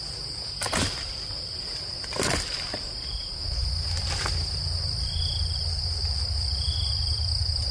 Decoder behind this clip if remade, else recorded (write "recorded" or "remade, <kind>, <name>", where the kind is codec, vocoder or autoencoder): recorded